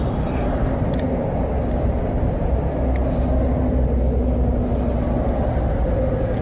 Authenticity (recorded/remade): recorded